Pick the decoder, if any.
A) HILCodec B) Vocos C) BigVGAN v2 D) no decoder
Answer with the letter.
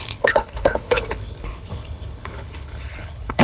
A